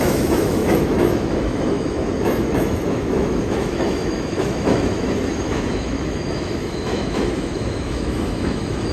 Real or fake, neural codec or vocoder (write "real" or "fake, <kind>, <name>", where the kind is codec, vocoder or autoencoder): fake, autoencoder, DAC-VAE